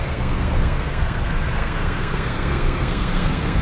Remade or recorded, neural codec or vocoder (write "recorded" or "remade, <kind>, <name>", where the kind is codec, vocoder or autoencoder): remade, codec, SNAC